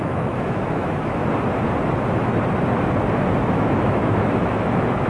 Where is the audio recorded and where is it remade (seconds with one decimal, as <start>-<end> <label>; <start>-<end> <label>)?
0.0-1.2 remade; 1.2-3.5 recorded; 3.5-5.1 remade